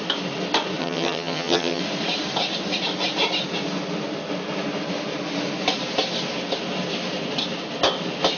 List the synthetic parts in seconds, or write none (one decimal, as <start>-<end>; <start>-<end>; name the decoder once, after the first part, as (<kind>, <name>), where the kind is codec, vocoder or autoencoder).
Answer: 0.8-1.8 (vocoder, HiFi-GAN)